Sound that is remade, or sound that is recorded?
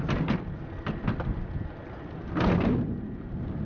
recorded